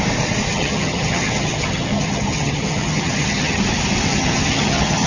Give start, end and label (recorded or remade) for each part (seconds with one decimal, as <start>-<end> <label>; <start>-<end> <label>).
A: 0.0-0.5 recorded; 0.5-3.6 remade; 3.6-4.1 recorded; 4.1-5.1 remade